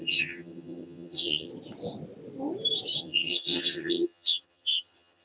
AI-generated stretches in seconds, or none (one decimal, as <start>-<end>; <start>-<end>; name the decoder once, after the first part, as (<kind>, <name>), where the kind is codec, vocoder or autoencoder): 0.0-1.5 (vocoder, HiFi-GAN); 3.0-5.2